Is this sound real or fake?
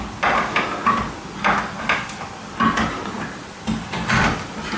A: real